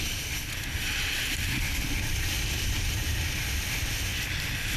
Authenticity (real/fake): real